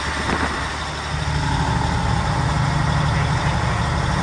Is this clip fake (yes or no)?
no